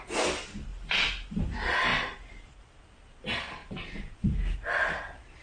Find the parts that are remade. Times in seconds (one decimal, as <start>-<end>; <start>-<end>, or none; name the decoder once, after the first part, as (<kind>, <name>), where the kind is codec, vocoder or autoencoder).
none